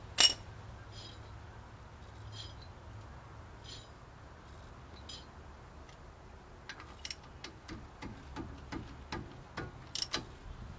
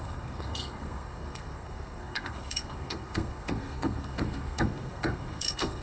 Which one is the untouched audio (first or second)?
first